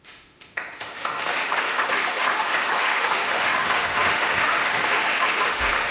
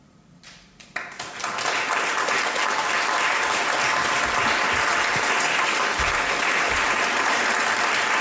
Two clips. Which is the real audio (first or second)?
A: second